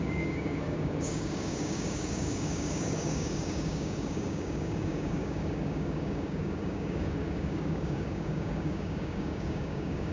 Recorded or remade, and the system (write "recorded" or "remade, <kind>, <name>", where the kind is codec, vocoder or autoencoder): remade, codec, DAC